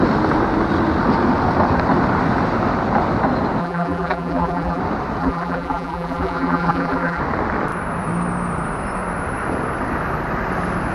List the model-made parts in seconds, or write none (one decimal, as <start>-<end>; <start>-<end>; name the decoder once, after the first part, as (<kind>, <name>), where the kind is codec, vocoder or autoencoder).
3.6-4.8 (vocoder, BigVGAN v2); 5.2-7.2